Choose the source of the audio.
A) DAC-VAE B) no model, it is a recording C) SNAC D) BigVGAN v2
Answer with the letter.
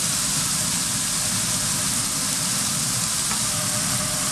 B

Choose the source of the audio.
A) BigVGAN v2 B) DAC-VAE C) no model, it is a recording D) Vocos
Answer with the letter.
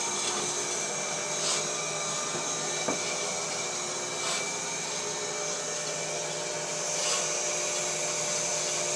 C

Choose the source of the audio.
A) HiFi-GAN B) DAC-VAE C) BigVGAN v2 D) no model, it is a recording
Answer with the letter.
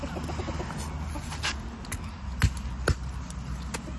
D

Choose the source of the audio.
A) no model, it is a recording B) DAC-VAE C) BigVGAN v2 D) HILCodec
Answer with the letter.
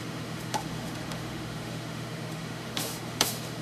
B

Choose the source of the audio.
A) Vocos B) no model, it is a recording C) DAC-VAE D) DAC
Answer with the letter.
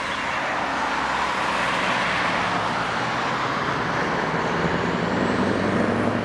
B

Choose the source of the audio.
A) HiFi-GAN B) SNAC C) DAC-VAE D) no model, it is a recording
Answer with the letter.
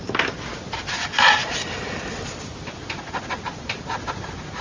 D